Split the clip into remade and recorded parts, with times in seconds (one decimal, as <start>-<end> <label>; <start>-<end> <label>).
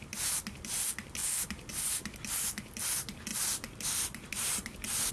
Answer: 0.0-5.1 recorded